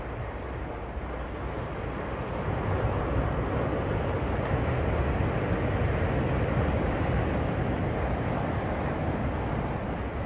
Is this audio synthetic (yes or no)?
no